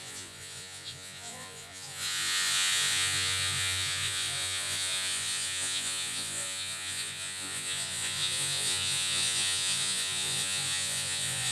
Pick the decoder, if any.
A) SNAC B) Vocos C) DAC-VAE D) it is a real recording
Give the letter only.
B